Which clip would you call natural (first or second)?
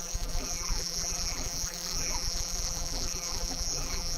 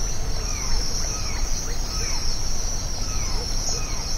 second